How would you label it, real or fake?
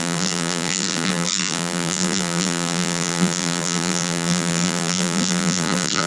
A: fake